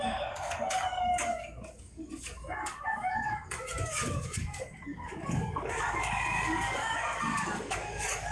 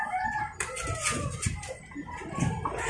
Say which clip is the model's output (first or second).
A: first